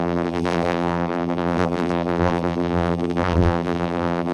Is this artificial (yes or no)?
yes